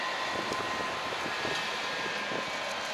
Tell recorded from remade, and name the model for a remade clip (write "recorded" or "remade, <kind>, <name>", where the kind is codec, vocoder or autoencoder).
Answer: recorded